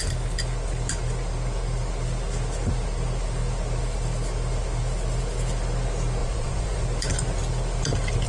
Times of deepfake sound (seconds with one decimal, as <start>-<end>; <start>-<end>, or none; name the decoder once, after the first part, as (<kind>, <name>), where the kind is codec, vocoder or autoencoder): 6.2-6.8 (vocoder, Vocos)